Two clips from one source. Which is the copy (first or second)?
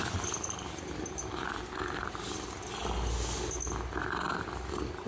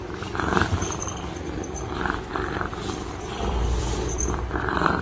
second